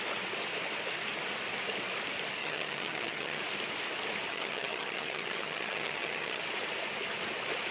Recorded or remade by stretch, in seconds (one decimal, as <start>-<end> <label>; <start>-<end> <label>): 0.0-2.4 recorded; 2.4-3.4 remade; 3.4-4.3 recorded; 4.3-6.4 remade; 6.4-7.7 recorded